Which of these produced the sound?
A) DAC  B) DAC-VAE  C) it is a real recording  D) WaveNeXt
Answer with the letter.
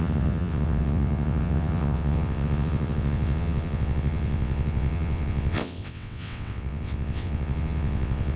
D